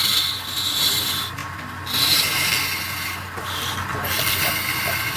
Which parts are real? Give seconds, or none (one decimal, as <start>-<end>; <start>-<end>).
0.0-5.2